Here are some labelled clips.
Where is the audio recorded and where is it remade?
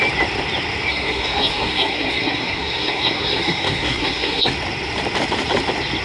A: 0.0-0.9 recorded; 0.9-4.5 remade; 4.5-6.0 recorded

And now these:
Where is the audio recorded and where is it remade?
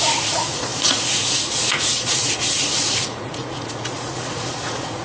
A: 0.0-5.0 remade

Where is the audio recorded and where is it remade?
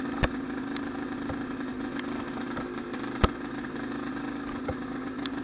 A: 0.0-5.4 recorded